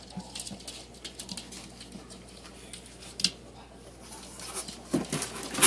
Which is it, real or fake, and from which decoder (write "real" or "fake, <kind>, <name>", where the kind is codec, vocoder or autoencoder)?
real